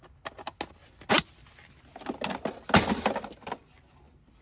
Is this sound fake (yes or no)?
no